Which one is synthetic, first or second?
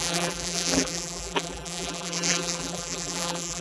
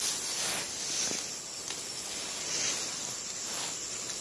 first